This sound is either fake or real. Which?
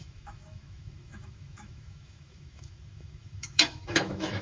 fake